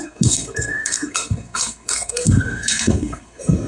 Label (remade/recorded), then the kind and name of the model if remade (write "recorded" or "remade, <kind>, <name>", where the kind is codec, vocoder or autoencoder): remade, codec, SNAC